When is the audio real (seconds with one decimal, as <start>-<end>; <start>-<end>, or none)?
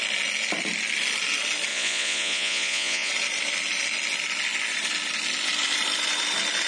0.0-1.7; 3.1-6.7